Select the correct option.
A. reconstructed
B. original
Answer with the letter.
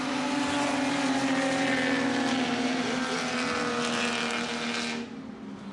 B